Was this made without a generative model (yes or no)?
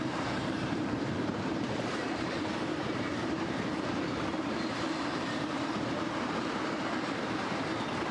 no